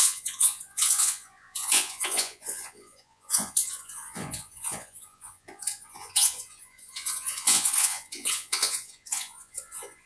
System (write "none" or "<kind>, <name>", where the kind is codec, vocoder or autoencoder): vocoder, Vocos